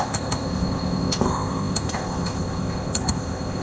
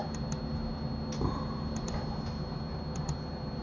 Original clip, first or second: second